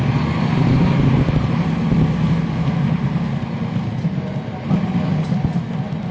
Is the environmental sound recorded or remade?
recorded